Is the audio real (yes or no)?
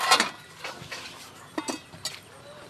yes